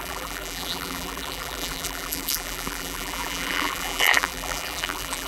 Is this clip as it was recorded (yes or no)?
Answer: no